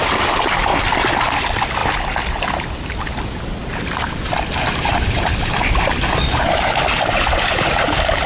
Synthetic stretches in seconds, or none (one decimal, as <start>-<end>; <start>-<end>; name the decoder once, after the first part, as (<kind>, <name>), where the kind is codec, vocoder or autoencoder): none